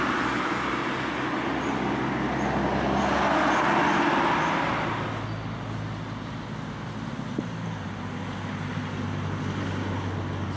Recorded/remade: recorded